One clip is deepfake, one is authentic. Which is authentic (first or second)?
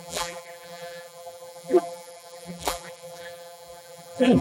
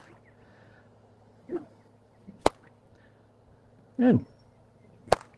second